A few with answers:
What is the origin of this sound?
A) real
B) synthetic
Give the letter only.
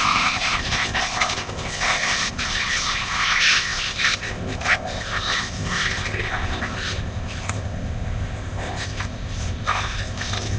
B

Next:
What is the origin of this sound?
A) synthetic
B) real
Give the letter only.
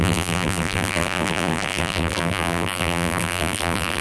A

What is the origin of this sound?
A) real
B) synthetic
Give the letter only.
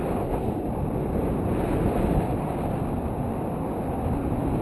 A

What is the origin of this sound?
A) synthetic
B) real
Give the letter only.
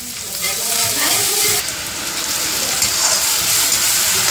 B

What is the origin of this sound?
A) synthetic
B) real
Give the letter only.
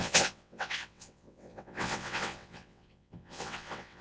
A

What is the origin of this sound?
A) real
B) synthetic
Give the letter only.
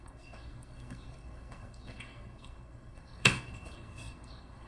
B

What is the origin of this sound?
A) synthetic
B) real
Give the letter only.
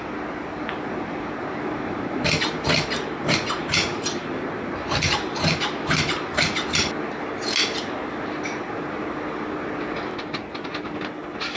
B